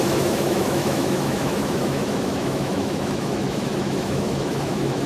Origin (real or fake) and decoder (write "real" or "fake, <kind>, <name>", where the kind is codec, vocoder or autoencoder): fake, autoencoder, DAC-VAE